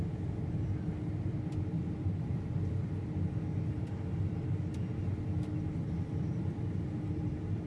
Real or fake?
real